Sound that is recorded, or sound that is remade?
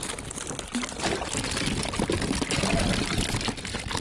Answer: recorded